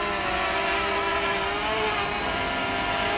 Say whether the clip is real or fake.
real